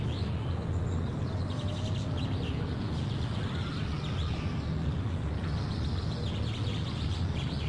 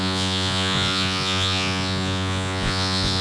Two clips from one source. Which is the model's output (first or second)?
second